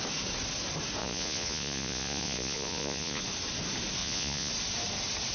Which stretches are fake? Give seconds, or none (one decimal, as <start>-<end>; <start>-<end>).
1.0-3.2; 4.0-4.5